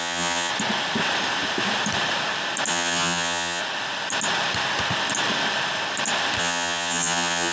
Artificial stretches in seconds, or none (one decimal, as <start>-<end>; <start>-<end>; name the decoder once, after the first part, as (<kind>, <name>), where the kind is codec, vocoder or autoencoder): 0.0-0.5 (vocoder, HiFi-GAN); 2.7-3.6; 6.4-7.5